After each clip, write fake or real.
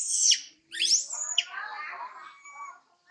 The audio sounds real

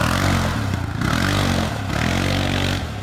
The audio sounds real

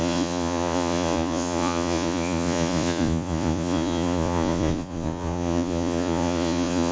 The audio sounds fake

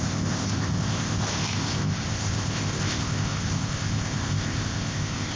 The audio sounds fake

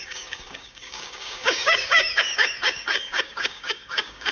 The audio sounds fake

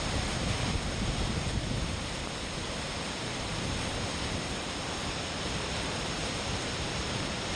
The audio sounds fake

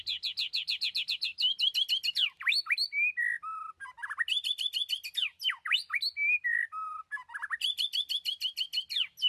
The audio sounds real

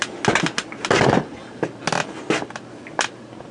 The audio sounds real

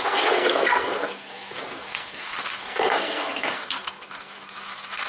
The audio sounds fake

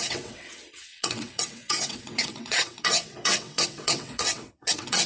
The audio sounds fake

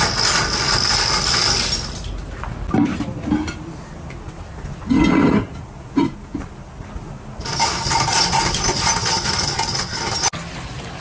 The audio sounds real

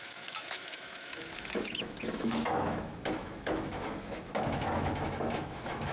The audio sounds fake